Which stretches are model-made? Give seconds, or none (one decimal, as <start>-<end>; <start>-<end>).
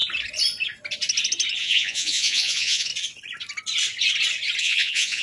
1.6-2.9; 4.6-5.2